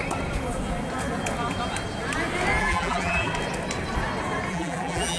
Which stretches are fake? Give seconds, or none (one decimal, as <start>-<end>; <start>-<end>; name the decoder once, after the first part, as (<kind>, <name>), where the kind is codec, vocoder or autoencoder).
2.6-3.3 (vocoder, BigVGAN v2); 4.5-5.2